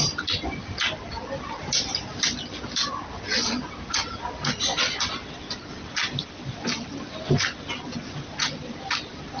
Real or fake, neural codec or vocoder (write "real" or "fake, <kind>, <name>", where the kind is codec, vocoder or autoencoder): real